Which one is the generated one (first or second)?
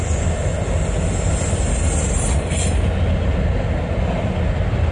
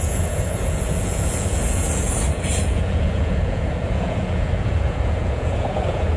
second